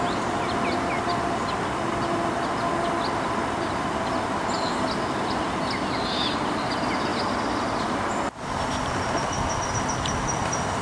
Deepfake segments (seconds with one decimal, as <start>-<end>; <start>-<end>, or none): 7.1-8.5